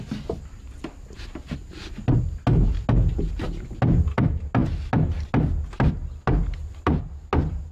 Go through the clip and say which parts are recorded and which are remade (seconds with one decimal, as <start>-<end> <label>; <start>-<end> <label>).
0.0-7.7 recorded